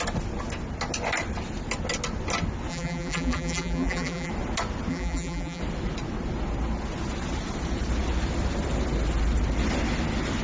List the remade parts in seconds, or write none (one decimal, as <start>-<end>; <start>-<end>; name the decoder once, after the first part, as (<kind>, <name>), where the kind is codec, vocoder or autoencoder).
2.7-4.3 (vocoder, BigVGAN v2); 4.9-5.6